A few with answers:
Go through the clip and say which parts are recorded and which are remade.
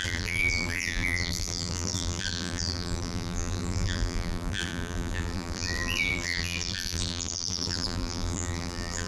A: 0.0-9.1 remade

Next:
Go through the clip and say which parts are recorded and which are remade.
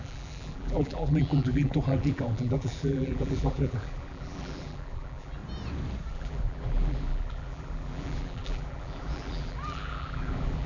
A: 0.0-5.4 remade; 5.4-6.1 recorded; 6.1-10.7 remade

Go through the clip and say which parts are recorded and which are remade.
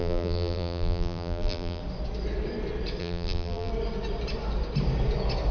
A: 0.0-1.8 remade; 1.8-3.0 recorded; 3.0-3.7 remade; 3.7-5.5 recorded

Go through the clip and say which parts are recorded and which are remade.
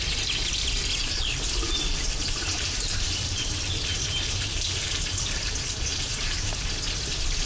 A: 0.0-1.0 recorded; 1.0-5.5 remade; 5.5-5.9 recorded; 5.9-6.7 remade; 6.7-7.5 recorded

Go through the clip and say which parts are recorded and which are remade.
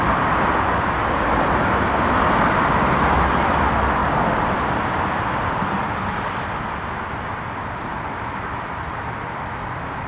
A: 0.0-4.0 recorded; 4.0-4.6 remade; 4.6-10.1 recorded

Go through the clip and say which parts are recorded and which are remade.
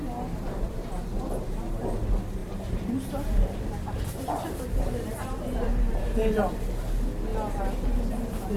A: 0.0-2.4 recorded; 2.4-6.6 remade; 6.6-8.6 recorded